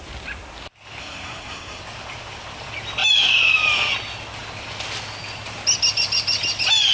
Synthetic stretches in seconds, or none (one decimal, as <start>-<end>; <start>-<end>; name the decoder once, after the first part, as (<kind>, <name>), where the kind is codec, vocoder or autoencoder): 1.0-1.8 (codec, SNAC)